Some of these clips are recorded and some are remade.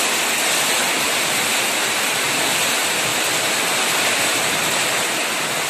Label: recorded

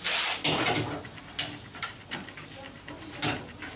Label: recorded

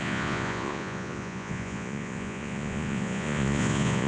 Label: remade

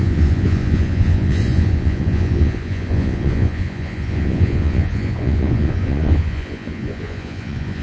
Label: remade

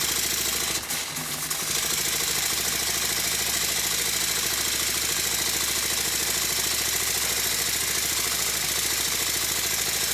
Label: recorded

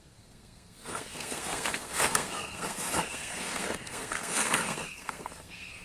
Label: remade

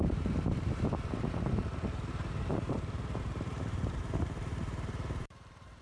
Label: remade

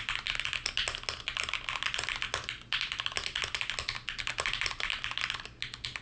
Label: recorded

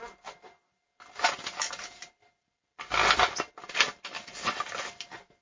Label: recorded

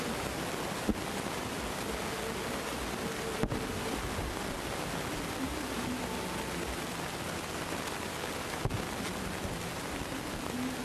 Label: recorded